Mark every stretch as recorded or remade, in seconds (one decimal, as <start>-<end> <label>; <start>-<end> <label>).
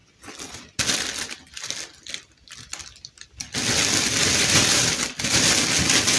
0.0-2.7 recorded; 2.7-5.5 remade; 5.5-6.2 recorded